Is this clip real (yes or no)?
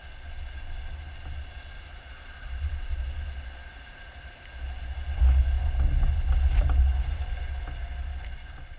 yes